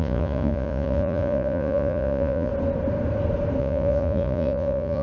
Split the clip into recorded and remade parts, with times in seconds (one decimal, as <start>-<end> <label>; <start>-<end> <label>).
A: 0.0-2.5 remade; 2.5-3.6 recorded; 3.6-5.0 remade